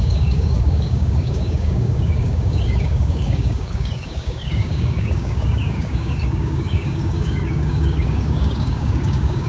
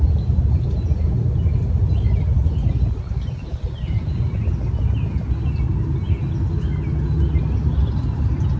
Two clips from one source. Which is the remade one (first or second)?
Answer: first